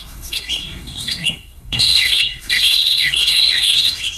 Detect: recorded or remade remade